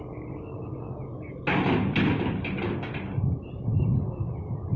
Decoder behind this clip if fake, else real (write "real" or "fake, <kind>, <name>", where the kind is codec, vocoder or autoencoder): real